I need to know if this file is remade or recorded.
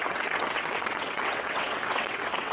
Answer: remade